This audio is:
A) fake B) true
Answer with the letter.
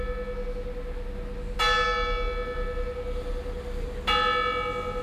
B